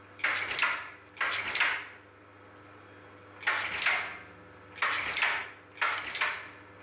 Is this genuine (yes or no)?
yes